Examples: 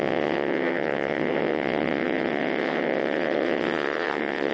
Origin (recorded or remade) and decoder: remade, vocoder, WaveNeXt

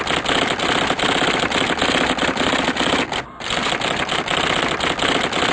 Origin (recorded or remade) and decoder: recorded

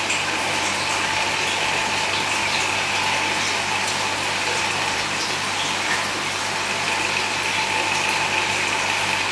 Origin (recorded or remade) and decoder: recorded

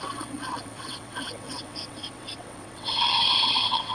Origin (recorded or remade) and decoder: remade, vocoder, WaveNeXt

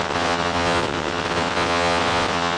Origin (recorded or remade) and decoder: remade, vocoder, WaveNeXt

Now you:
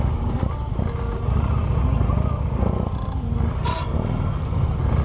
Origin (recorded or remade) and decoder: recorded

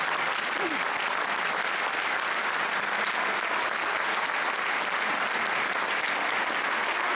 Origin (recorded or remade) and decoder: recorded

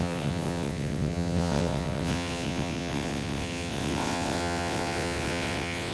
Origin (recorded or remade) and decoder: remade, vocoder, WaveNeXt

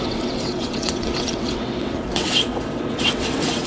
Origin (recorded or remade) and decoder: remade, vocoder, WaveNeXt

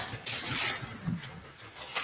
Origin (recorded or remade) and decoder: recorded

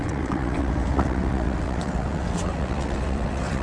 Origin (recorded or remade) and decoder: remade, vocoder, WaveNeXt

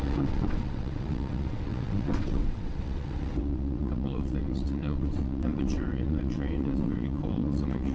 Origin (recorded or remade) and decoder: remade, vocoder, WaveNeXt